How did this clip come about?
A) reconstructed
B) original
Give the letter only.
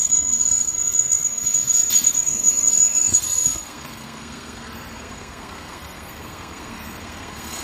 A